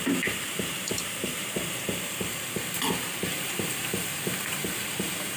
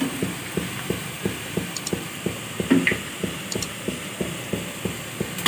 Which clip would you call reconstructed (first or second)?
first